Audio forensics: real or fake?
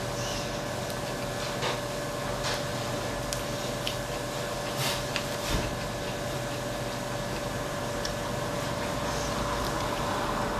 real